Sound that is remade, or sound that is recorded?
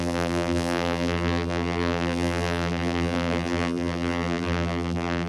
remade